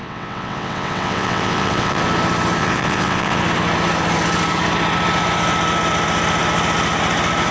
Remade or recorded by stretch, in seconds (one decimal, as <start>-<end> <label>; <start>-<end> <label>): 0.0-2.0 remade; 2.0-2.6 recorded; 2.6-3.4 remade; 3.4-7.5 recorded